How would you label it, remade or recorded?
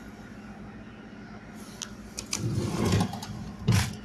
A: recorded